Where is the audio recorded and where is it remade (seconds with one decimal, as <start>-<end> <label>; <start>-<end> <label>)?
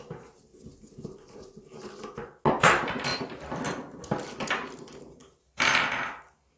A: 0.0-5.2 recorded; 5.2-6.0 remade; 6.0-6.6 recorded